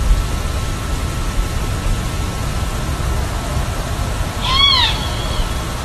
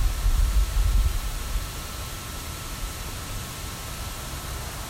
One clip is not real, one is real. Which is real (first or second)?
first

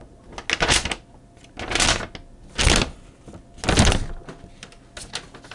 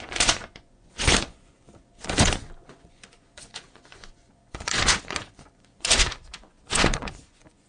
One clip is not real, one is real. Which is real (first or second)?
first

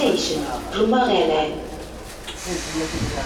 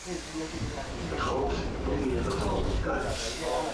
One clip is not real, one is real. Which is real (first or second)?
first